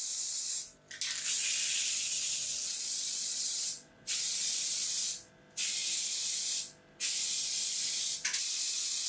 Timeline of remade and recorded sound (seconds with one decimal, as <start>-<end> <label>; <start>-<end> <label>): 0.0-1.4 recorded; 1.4-4.9 remade; 4.9-9.1 recorded